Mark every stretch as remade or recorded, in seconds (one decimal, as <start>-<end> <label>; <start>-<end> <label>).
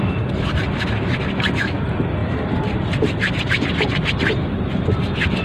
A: 0.0-5.4 recorded